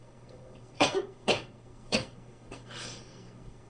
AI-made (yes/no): yes